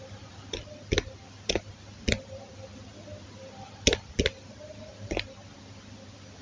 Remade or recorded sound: recorded